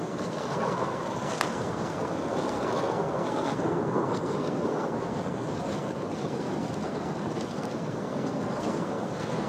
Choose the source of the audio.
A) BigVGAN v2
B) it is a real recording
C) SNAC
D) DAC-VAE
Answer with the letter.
C